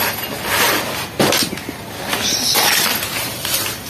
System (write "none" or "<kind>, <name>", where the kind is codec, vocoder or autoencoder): none